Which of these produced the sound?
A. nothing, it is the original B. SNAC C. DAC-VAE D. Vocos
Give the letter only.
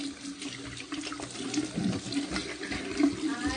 A